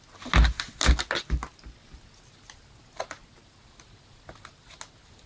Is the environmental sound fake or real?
real